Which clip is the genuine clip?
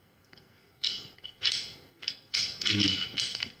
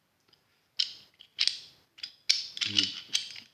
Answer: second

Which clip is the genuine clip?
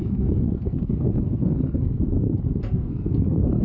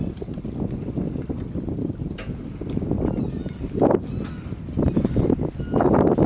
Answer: second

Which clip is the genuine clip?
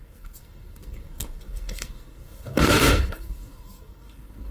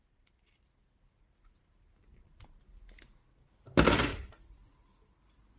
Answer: second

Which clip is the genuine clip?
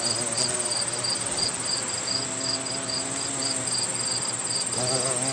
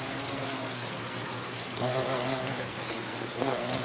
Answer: first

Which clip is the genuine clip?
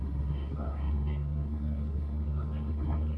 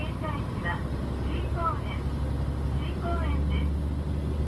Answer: second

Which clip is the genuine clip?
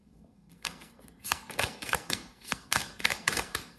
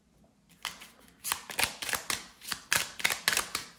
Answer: second